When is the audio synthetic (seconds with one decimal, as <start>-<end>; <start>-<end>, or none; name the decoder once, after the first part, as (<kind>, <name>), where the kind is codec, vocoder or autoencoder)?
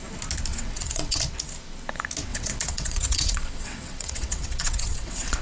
0.5-1.2 (vocoder, WaveNeXt); 2.3-5.4